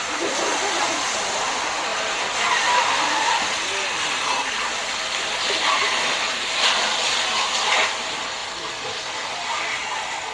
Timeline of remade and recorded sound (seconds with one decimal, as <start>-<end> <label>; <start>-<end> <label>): 0.0-10.3 recorded